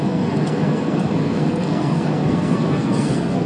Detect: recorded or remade remade